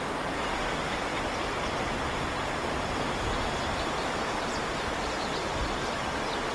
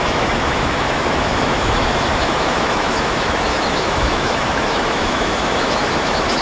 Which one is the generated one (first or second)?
second